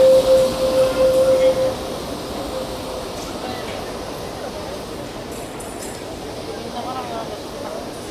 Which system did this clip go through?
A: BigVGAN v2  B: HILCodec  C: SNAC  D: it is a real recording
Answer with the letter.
D